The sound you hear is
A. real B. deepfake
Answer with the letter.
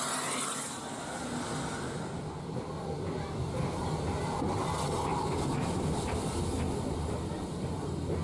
A